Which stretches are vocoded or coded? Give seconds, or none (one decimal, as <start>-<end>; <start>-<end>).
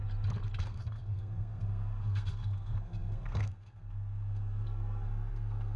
0.6-5.8